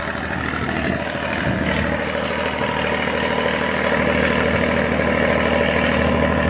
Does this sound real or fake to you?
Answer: real